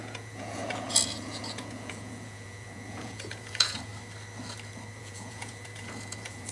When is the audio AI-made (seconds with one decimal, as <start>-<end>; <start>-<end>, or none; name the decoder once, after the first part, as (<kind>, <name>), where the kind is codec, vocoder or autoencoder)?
0.0-3.9 (vocoder, Vocos); 5.0-6.5